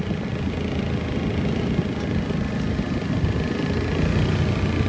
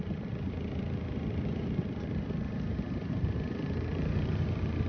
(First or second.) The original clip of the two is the first